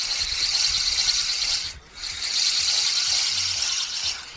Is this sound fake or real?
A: real